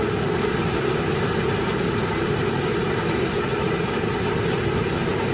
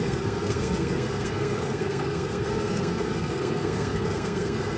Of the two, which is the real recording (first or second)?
first